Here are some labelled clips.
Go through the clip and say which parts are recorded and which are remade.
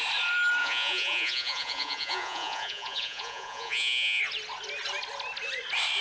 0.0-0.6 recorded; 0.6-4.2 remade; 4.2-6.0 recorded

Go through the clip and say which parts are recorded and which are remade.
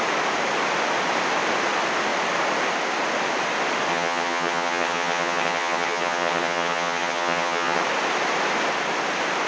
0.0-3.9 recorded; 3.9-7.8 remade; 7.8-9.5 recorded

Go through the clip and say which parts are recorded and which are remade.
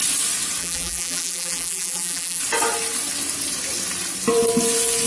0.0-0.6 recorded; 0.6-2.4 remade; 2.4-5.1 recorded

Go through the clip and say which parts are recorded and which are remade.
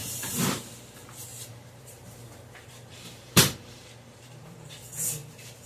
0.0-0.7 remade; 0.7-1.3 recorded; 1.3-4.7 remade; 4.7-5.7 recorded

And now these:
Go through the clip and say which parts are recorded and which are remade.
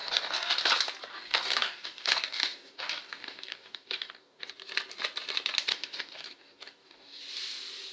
0.0-0.6 remade; 0.6-1.1 recorded; 1.1-4.5 remade; 4.5-5.7 recorded; 5.7-7.2 remade; 7.2-7.9 recorded